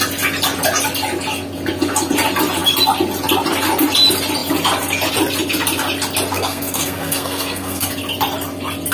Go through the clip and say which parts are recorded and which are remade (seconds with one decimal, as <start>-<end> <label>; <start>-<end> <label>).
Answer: 0.0-6.3 recorded; 6.3-7.9 remade; 7.9-8.9 recorded